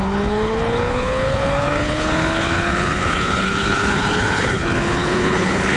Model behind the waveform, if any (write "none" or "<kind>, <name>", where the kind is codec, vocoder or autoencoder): codec, HILCodec